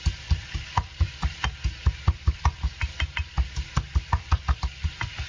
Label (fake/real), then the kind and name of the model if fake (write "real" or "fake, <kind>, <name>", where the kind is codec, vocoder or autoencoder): real